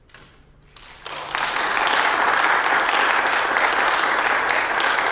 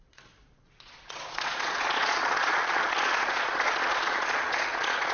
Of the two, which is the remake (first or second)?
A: second